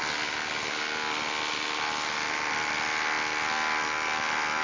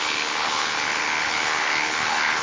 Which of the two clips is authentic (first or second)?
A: first